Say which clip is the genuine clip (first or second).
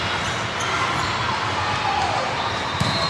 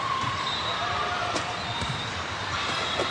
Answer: first